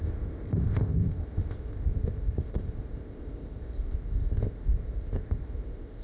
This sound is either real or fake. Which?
fake